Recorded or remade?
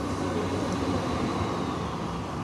recorded